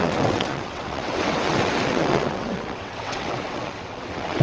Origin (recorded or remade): remade